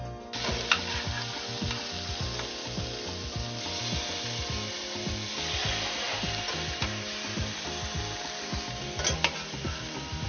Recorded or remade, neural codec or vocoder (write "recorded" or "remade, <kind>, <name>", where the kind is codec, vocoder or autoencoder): recorded